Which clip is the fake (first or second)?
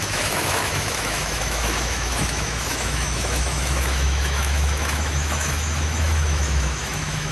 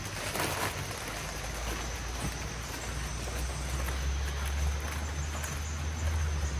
first